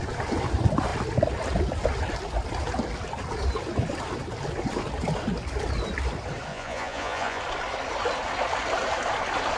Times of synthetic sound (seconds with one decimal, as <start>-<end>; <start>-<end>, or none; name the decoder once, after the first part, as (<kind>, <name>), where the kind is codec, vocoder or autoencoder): 6.5-7.4 (vocoder, Vocos)